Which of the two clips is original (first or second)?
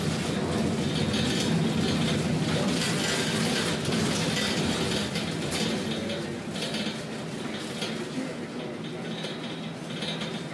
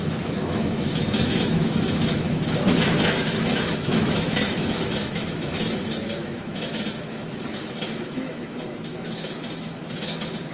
first